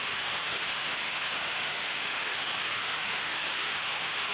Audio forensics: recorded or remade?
remade